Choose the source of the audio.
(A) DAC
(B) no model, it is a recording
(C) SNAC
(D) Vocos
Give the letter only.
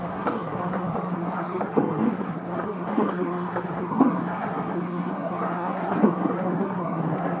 C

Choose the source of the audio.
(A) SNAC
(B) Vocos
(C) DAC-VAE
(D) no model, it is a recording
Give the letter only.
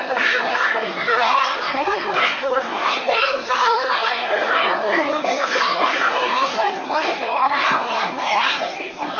A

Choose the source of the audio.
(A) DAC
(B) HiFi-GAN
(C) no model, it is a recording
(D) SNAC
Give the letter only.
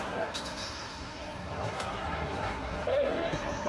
D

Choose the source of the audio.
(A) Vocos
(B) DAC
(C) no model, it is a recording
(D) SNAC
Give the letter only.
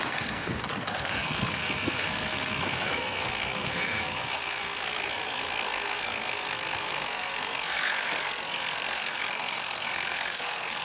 D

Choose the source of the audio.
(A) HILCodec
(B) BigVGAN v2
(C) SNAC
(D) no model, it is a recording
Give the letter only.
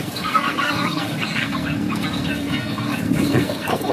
C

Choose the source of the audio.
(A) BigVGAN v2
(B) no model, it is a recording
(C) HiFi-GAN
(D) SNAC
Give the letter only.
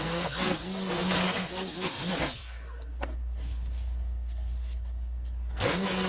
D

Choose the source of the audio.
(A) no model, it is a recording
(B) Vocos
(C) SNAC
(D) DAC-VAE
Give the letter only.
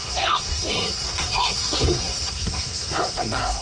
C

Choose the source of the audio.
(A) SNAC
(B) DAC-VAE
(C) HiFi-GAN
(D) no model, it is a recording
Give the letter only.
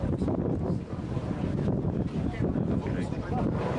D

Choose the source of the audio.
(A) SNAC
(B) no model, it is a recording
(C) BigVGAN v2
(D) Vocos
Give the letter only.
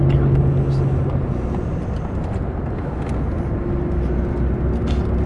B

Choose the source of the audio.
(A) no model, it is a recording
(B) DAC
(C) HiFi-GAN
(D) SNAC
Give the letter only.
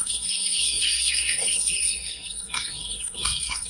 D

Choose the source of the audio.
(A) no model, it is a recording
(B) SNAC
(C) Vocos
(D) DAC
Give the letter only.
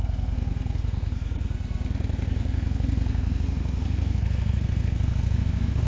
B